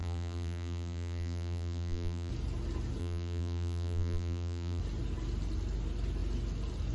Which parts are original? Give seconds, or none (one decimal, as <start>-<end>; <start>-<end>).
2.3-3.0; 4.8-6.9